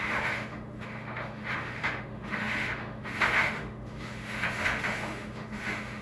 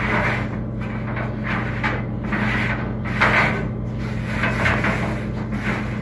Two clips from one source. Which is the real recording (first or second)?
second